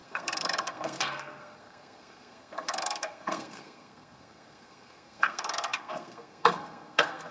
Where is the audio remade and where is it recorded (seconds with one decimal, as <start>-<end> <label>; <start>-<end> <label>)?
0.0-7.3 remade